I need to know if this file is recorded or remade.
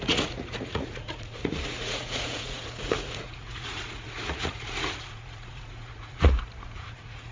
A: remade